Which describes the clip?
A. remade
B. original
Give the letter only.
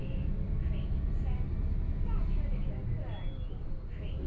B